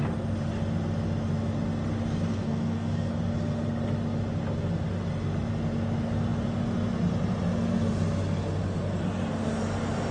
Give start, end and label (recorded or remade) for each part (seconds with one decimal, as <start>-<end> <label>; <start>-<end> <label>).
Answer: 0.0-2.3 recorded; 2.3-3.1 remade; 3.1-10.1 recorded